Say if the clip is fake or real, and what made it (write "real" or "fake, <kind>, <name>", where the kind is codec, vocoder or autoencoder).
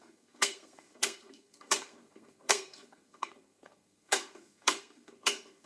fake, codec, SNAC